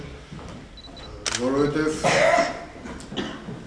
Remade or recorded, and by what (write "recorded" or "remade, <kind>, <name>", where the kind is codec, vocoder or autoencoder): recorded